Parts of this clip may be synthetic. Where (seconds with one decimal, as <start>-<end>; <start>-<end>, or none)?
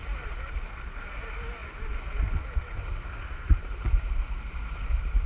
none